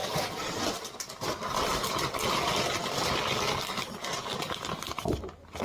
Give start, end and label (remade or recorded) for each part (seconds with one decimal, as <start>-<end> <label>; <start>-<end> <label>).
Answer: 0.0-5.6 recorded